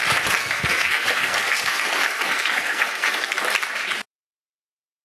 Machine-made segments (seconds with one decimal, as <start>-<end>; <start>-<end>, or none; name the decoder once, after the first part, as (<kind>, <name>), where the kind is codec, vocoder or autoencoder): 0.4-3.4 (codec, SNAC)